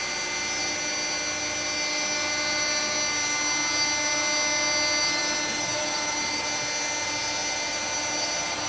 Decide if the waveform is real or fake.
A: real